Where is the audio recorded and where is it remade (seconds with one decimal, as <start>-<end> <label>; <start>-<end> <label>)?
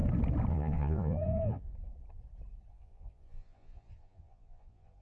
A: 0.0-0.5 recorded; 0.5-1.7 remade; 1.7-2.7 recorded; 2.7-5.0 remade